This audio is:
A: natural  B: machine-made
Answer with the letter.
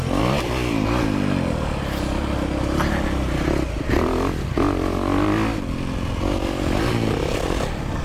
A